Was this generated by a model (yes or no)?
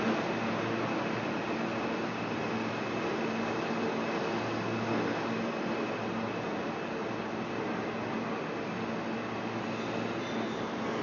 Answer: no